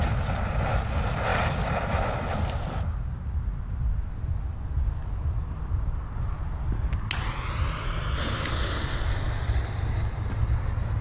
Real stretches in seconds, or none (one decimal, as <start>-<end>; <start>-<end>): 0.0-1.3; 2.8-11.0

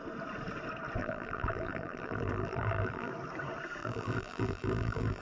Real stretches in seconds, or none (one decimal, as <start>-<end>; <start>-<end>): 0.0-1.0; 3.1-3.8

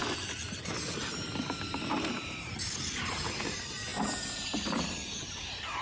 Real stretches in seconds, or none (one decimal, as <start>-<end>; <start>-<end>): 0.0-5.8

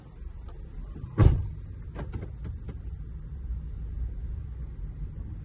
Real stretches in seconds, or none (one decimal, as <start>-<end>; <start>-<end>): 0.0-5.4

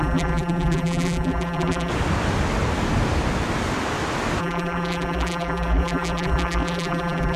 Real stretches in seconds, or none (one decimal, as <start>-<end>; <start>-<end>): 1.9-4.4

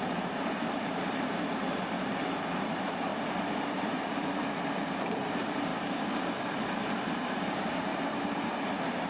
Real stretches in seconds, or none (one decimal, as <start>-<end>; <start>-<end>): 3.1-3.6

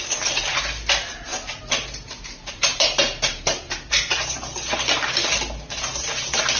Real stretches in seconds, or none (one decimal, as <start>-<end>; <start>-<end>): 0.0-6.6

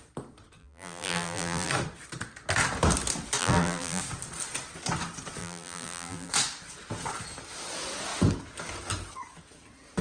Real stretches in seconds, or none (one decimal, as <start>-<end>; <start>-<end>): 0.0-0.6; 1.7-3.4; 4.0-5.4; 6.3-10.0